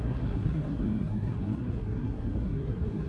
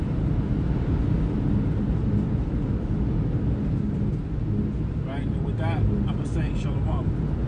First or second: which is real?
second